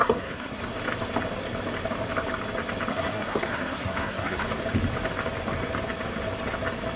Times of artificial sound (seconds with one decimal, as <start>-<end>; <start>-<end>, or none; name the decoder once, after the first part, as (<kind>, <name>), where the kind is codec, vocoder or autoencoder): 0.0-0.6 (codec, SNAC); 2.9-4.4